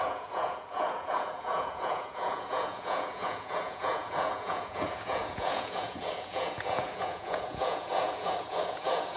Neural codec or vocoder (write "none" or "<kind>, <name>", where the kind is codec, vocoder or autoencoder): vocoder, Vocos